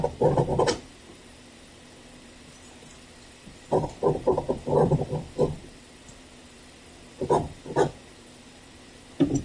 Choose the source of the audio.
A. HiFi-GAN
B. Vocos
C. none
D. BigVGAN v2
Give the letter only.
D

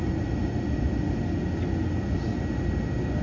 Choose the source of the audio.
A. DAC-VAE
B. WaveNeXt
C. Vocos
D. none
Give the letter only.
D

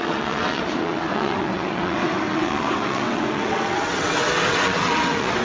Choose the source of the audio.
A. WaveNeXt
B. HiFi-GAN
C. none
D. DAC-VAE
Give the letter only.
A